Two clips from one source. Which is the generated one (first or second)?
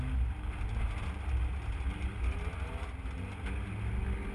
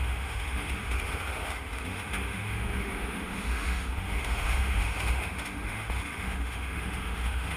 second